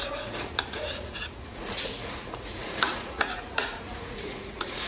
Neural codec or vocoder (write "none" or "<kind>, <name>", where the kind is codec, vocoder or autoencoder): vocoder, Vocos